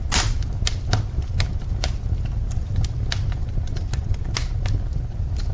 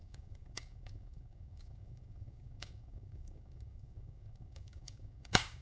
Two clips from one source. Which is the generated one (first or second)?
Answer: second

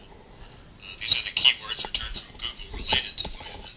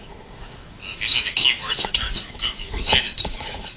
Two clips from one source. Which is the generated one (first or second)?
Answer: second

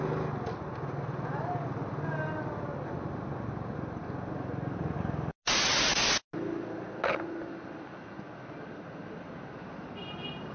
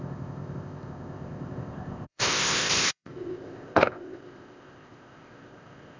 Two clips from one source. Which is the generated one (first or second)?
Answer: second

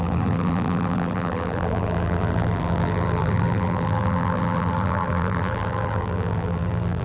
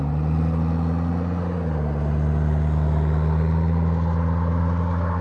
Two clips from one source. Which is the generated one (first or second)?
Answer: first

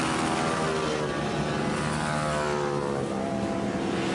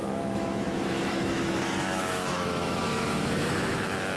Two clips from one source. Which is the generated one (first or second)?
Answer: second